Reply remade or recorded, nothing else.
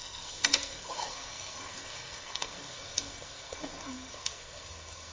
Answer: remade